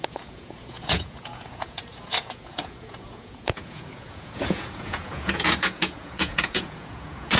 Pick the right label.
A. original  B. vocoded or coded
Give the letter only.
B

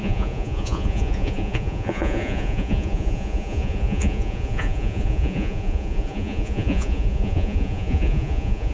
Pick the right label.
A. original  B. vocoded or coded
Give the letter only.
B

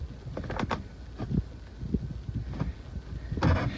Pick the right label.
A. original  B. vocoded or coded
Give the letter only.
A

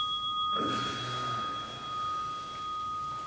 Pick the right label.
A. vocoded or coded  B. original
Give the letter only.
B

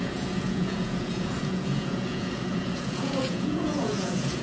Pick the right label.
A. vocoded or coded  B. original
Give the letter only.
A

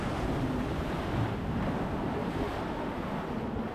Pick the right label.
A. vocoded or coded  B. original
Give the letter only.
B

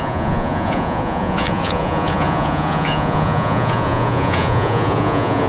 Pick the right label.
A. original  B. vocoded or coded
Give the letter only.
B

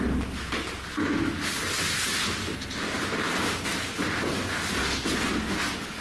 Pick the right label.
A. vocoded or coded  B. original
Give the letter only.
B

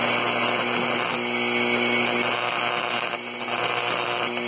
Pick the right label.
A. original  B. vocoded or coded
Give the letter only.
A